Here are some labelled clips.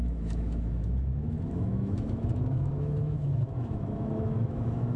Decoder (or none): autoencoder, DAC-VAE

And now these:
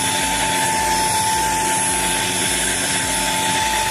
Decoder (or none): none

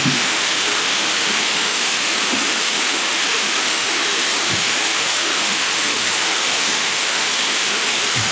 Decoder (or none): autoencoder, DAC-VAE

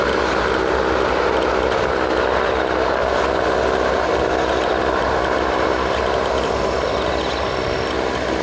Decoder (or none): none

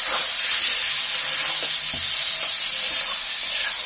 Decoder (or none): none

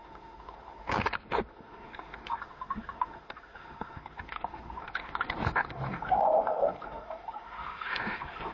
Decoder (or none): autoencoder, DAC-VAE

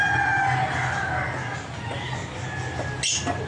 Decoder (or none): none